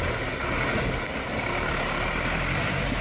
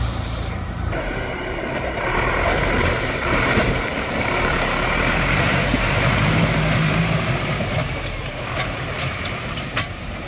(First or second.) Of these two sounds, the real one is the first